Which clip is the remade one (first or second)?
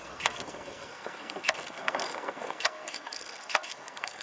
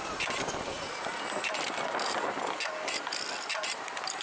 first